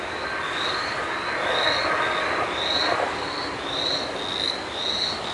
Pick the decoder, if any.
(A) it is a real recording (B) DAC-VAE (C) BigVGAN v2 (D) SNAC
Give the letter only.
A